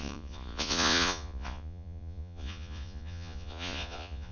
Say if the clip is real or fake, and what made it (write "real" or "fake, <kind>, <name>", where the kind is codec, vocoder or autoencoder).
fake, vocoder, Vocos